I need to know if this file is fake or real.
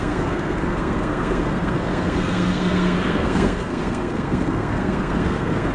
fake